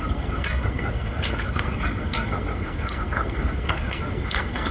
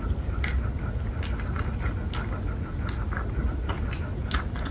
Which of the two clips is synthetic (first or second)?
first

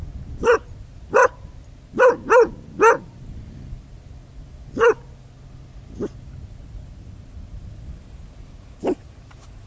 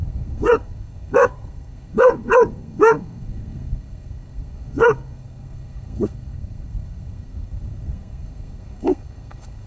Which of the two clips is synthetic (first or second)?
second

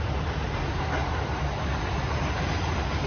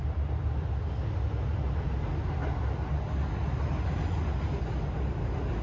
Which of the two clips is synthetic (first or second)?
first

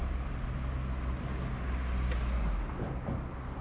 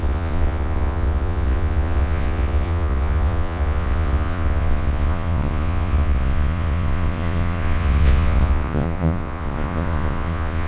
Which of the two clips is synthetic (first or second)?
second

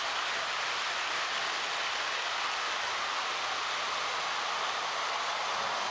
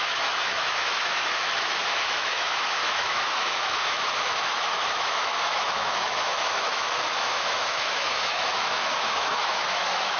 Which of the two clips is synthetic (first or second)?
second